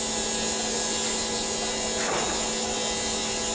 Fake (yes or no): no